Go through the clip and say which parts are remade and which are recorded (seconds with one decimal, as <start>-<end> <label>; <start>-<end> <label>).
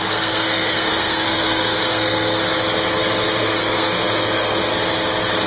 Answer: 0.0-2.4 remade; 2.4-3.4 recorded; 3.4-4.6 remade; 4.6-5.5 recorded